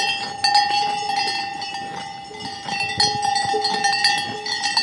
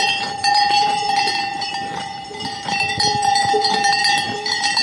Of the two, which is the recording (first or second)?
first